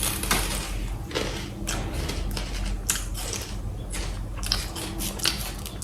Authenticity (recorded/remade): recorded